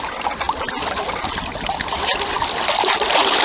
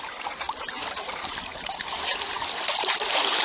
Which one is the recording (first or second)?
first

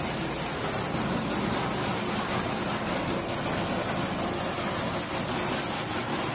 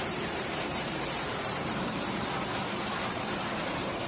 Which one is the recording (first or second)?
first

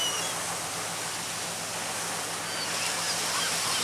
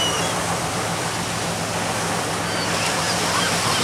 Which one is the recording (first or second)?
first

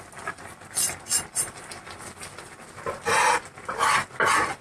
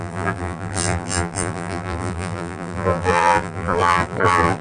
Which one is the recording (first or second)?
first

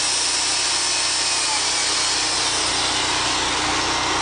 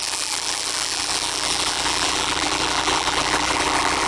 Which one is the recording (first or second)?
first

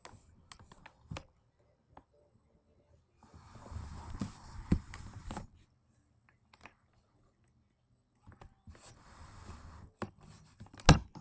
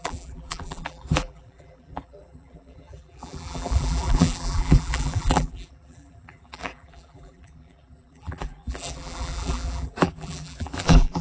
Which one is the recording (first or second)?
first